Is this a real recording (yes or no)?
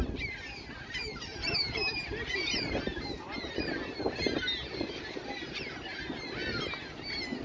yes